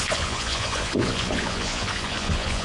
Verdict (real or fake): fake